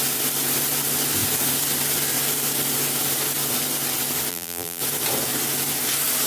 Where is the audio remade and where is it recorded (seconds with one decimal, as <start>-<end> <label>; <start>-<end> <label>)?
0.0-4.3 recorded; 4.3-4.8 remade; 4.8-6.3 recorded